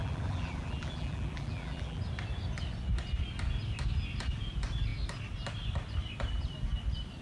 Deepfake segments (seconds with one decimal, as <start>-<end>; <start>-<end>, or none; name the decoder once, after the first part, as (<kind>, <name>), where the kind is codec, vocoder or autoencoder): 0.0-2.0 (vocoder, BigVGAN v2)